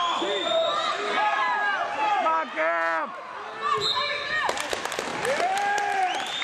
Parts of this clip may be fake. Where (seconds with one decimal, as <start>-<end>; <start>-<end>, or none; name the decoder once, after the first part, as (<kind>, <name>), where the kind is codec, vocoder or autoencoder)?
none